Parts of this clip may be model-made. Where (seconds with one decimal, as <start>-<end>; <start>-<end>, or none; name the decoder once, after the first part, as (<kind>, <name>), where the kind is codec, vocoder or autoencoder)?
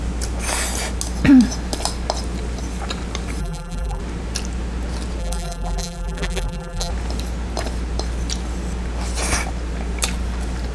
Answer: 3.4-4.0 (vocoder, BigVGAN v2); 5.2-6.9